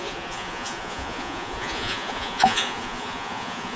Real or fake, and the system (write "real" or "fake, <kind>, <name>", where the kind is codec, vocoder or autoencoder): fake, vocoder, Vocos